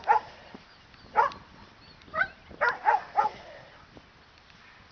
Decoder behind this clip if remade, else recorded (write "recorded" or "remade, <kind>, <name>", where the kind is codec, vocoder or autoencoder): recorded